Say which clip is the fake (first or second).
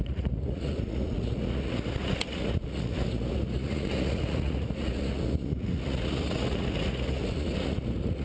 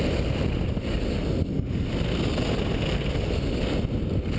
first